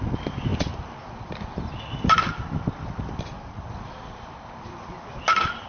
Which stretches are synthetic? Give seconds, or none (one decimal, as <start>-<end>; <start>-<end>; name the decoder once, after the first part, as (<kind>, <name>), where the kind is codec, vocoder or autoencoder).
none

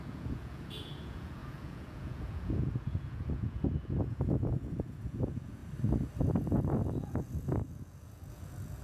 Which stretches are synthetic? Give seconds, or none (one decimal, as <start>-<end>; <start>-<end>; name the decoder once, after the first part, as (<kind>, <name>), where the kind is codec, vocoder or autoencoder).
0.0-5.6 (vocoder, Vocos); 6.2-8.8

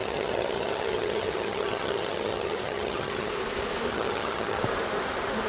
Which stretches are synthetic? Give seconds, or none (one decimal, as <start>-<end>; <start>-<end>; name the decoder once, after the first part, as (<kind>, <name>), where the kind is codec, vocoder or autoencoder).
0.0-3.3 (vocoder, HiFi-GAN); 3.9-4.6

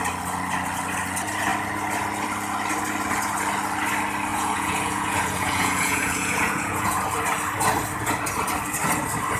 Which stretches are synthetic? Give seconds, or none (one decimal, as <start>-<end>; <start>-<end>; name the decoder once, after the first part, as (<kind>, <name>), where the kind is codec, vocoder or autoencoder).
4.3-7.0 (vocoder, Vocos)

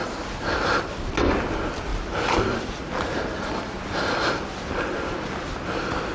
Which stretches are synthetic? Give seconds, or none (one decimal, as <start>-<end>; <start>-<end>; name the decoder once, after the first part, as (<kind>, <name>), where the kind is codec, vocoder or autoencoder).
1.9-2.8 (vocoder, BigVGAN v2)

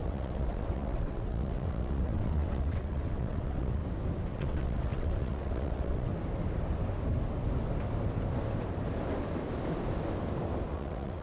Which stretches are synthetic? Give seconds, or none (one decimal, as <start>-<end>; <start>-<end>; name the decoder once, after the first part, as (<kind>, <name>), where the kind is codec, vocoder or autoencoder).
0.0-3.8 (vocoder, WaveNeXt); 4.3-6.1; 10.7-11.2

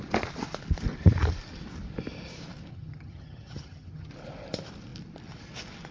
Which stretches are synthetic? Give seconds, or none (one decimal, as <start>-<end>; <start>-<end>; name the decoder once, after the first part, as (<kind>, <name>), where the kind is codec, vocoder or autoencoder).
2.7-4.1 (vocoder, HiFi-GAN)